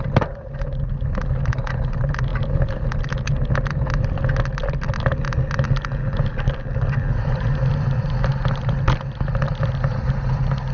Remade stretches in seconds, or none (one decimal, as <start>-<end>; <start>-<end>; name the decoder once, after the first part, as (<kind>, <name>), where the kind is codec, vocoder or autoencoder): none